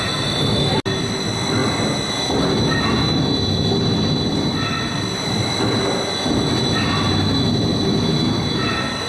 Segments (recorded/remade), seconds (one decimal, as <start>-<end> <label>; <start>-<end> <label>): 0.0-9.1 recorded